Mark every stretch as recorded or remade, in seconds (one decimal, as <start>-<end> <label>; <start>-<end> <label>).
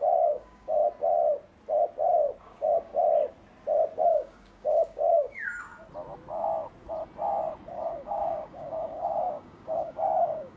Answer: 0.0-0.8 remade; 0.8-2.4 recorded; 2.4-2.9 remade; 2.9-4.0 recorded; 4.0-5.7 remade; 5.7-7.7 recorded; 7.7-10.6 remade